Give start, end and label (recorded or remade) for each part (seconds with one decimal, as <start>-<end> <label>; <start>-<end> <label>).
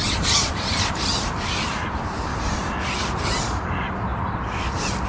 0.0-2.3 remade; 2.3-3.4 recorded; 3.4-4.1 remade; 4.1-5.1 recorded